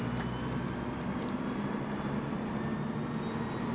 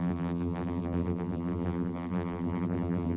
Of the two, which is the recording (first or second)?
first